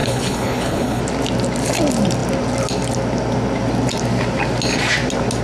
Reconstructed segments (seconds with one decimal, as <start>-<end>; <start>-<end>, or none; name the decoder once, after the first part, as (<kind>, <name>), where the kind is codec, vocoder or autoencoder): 0.0-1.0 (codec, HILCodec)